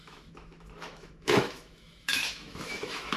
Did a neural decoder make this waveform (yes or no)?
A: yes